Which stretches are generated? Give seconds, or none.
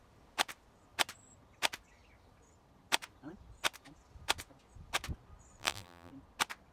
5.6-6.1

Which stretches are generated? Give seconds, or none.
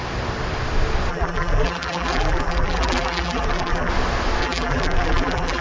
1.1-3.9; 4.4-5.6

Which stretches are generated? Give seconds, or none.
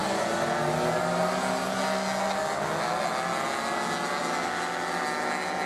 none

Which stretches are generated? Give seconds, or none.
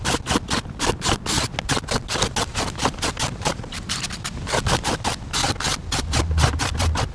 2.5-3.5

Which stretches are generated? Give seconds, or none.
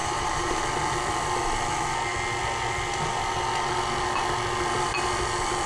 0.0-0.6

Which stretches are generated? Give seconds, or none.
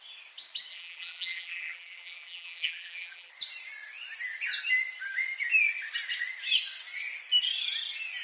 0.7-3.3